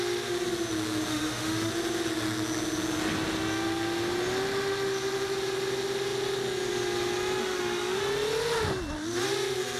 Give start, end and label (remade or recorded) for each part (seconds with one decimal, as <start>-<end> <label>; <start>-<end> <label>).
0.0-1.1 recorded; 1.1-1.7 remade; 1.7-7.4 recorded; 7.4-8.0 remade; 8.0-9.8 recorded